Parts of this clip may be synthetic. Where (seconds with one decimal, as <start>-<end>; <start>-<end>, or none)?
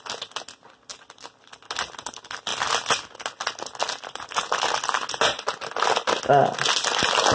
none